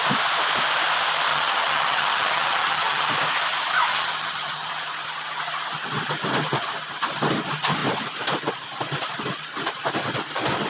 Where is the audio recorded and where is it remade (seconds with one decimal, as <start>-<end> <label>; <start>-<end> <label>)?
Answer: 0.0-1.3 recorded; 1.3-3.1 remade; 3.1-3.9 recorded; 3.9-4.7 remade; 4.7-10.7 recorded